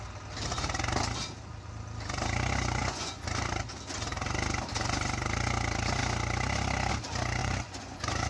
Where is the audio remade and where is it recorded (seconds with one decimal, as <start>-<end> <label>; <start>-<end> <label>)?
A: 0.0-2.8 recorded; 2.8-3.5 remade; 3.5-7.4 recorded; 7.4-8.3 remade